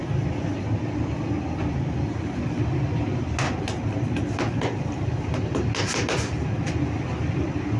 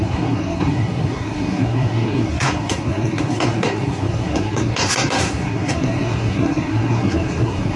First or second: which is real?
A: first